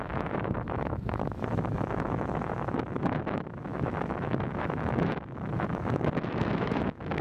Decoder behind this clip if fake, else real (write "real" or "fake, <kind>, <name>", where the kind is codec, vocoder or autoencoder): fake, autoencoder, DAC-VAE